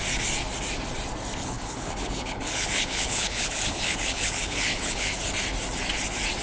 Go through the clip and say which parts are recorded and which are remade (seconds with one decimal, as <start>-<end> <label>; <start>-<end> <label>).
0.0-1.4 recorded; 1.4-5.2 remade; 5.2-6.4 recorded